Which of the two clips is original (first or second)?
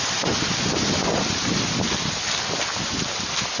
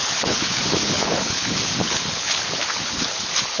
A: first